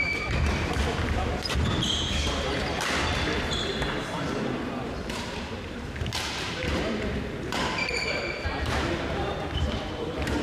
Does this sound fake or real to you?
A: fake